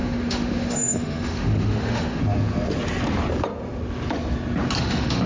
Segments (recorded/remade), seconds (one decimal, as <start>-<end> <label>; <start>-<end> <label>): 0.0-2.2 remade; 2.2-4.8 recorded; 4.8-5.3 remade

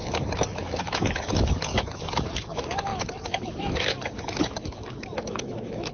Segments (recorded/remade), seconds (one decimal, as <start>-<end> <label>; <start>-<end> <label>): 0.0-5.9 remade

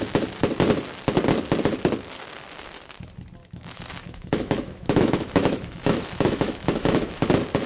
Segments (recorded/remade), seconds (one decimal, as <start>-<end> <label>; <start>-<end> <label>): 0.0-3.4 recorded; 3.4-7.2 remade; 7.2-7.7 recorded